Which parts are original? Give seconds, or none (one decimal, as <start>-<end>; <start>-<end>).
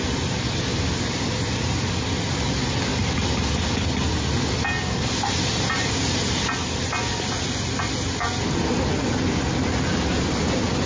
0.0-10.9